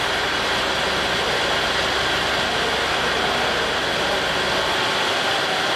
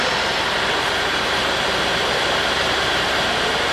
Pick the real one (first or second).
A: first